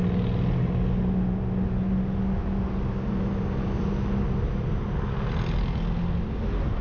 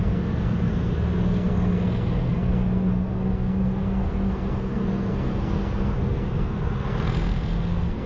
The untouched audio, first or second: first